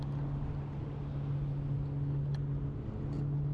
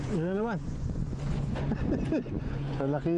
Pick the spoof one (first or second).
second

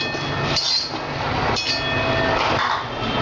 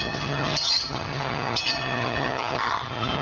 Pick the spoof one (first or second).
second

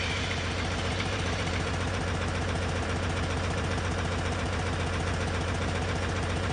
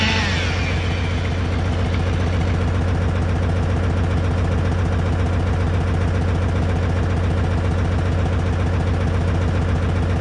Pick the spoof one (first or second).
first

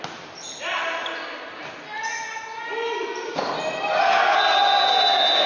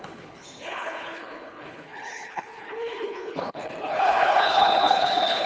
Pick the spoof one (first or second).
second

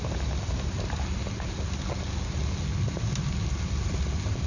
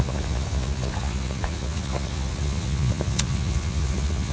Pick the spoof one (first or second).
second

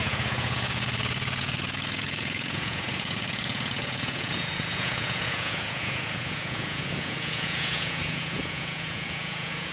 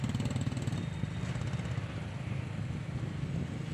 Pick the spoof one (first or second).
first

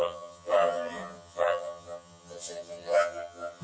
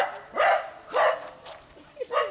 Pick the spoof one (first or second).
first